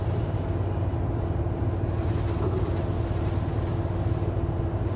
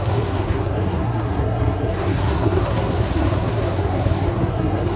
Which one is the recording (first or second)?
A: first